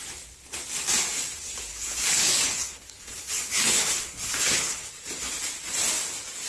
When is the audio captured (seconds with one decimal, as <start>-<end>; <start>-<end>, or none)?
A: 0.0-1.7; 4.9-6.5

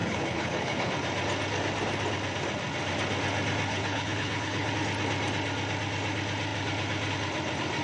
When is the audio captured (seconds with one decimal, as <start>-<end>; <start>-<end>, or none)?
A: 0.9-3.7; 4.7-7.8

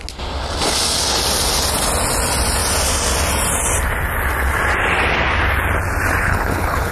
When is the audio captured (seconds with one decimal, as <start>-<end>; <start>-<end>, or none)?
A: 0.0-6.2

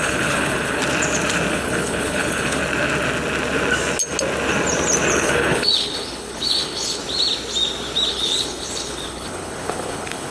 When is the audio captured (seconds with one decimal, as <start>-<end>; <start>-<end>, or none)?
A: 0.8-1.5; 2.6-5.1; 7.0-8.1

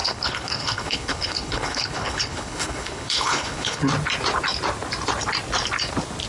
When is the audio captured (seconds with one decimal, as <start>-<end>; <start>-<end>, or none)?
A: 3.8-6.3